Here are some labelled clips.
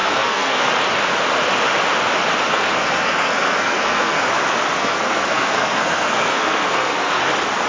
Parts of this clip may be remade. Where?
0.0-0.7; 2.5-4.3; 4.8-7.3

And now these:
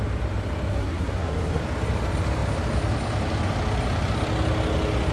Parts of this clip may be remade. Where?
0.7-1.6

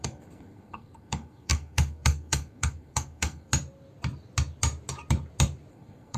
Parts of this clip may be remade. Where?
0.0-3.5; 5.7-6.2

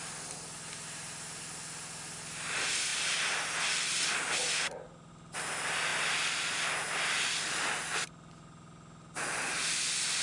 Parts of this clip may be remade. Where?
none

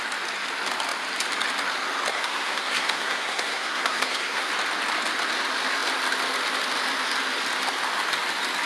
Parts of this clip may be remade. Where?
2.1-4.5

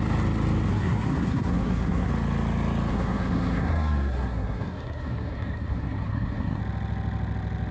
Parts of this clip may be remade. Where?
0.7-2.1; 2.9-6.6